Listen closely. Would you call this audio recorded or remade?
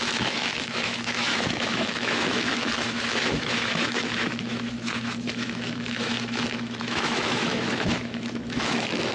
remade